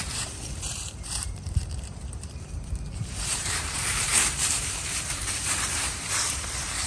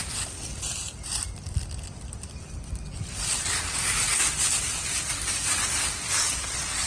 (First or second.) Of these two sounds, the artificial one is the first